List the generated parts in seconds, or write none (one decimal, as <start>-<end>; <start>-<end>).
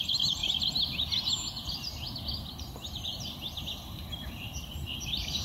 none